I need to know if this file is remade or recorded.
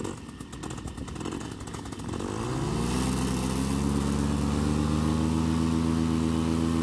recorded